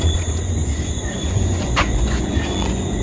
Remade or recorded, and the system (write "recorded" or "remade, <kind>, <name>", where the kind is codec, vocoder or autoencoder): remade, vocoder, Vocos